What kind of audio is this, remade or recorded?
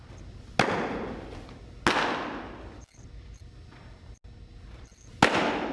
recorded